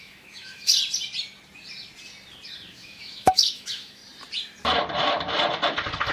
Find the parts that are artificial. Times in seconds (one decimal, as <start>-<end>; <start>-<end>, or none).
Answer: 0.0-0.7; 2.7-4.0